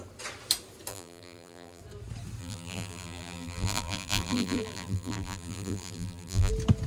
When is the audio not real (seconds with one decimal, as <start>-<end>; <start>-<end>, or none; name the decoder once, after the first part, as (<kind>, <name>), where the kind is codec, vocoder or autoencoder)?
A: 0.9-1.8 (vocoder, BigVGAN v2); 2.4-6.5